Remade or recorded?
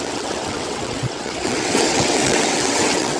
remade